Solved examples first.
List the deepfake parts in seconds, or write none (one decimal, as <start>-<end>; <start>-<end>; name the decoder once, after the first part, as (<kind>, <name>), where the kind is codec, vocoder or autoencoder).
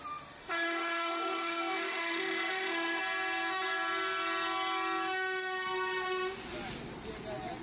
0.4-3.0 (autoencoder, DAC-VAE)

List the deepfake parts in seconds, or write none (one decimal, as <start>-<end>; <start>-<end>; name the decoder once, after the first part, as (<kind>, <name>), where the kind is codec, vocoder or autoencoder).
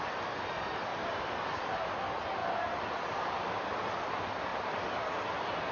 0.9-1.9 (vocoder, BigVGAN v2); 4.5-5.0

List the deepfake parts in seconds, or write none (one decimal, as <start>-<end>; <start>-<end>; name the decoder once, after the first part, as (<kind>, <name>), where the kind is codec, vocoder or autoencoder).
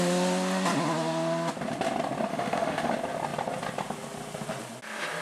2.3-2.9 (autoencoder, DAC-VAE)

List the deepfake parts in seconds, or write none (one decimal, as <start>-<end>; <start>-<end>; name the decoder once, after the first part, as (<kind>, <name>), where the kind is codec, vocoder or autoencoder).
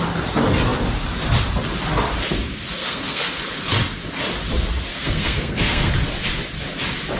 2.8-3.4 (codec, SNAC); 4.9-5.9